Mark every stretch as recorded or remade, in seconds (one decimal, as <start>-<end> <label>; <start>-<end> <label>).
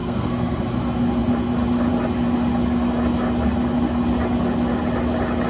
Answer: 0.0-0.6 remade; 0.6-5.5 recorded